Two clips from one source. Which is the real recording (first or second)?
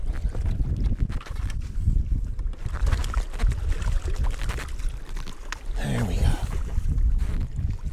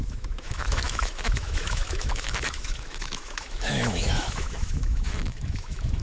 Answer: first